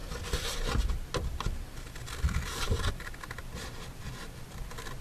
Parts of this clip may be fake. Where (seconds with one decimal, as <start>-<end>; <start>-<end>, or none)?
none